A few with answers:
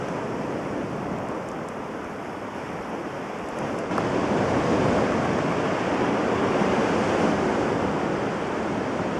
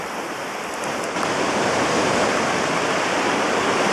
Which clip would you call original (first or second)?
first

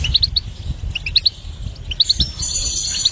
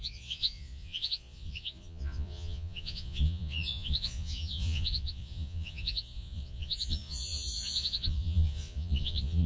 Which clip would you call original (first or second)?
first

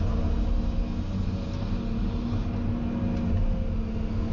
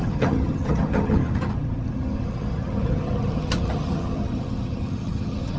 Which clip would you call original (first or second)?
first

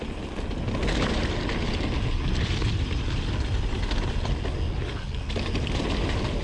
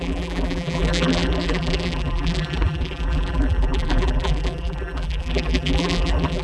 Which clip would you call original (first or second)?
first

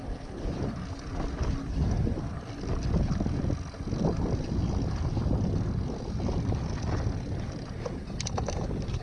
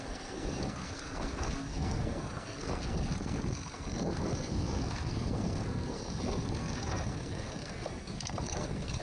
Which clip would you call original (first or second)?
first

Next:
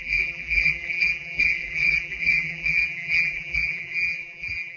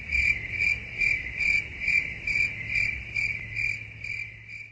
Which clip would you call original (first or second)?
second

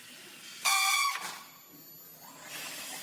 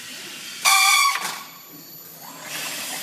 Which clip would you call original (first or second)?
first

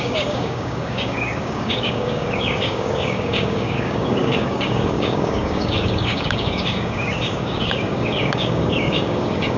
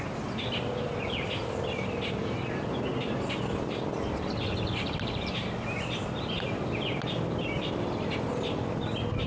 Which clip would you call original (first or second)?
second